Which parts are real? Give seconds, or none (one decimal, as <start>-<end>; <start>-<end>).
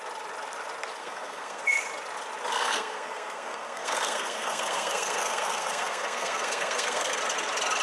0.0-1.0; 1.6-2.5; 7.2-7.8